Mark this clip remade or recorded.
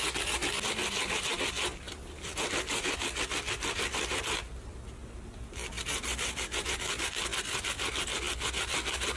recorded